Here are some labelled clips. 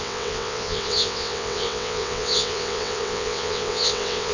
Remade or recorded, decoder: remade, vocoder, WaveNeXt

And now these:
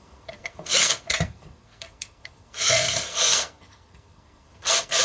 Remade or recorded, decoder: remade, codec, SNAC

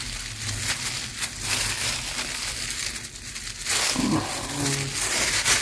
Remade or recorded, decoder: recorded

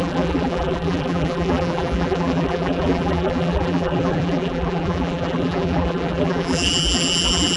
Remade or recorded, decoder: remade, vocoder, BigVGAN v2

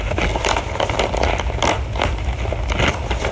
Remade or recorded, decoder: recorded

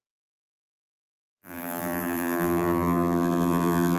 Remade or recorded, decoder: remade, vocoder, BigVGAN v2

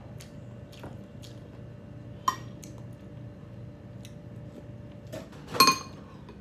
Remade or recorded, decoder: recorded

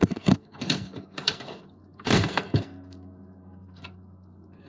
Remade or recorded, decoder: remade, codec, SNAC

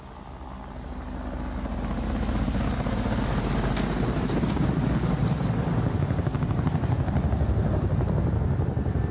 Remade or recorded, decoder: recorded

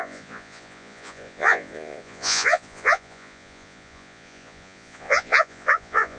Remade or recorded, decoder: remade, vocoder, Vocos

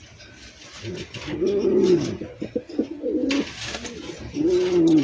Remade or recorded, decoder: recorded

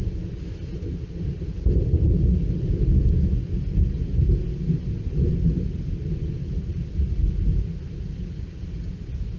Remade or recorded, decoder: recorded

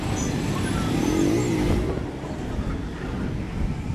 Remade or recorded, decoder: recorded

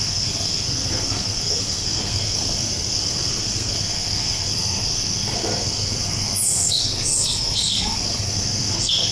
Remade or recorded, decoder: remade, codec, SNAC